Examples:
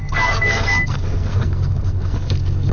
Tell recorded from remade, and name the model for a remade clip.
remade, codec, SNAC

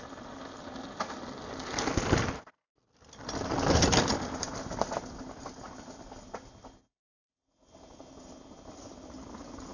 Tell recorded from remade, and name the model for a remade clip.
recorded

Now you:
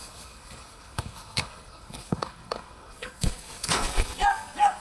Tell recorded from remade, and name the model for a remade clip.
remade, codec, SNAC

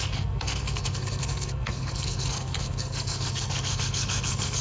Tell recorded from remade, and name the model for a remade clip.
remade, codec, SNAC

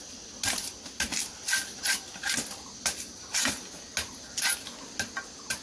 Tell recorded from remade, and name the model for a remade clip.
recorded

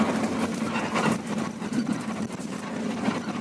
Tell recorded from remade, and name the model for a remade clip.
recorded